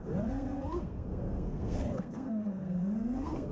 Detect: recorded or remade remade